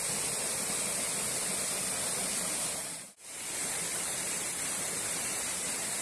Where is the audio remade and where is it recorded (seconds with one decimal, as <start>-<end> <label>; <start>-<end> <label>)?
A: 0.0-2.8 recorded; 2.8-3.4 remade; 3.4-3.9 recorded; 3.9-6.0 remade